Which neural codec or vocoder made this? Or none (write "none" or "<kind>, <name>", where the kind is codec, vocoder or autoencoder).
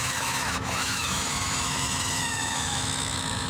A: autoencoder, DAC-VAE